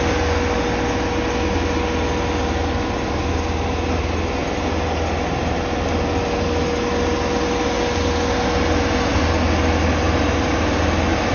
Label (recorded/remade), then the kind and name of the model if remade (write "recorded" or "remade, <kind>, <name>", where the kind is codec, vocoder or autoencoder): recorded